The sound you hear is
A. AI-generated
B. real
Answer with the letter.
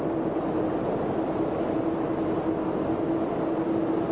B